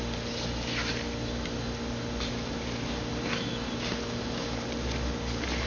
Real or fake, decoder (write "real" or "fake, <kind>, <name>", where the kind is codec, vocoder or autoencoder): real